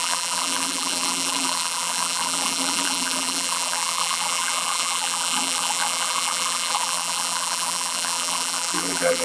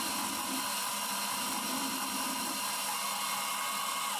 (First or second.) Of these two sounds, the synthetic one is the first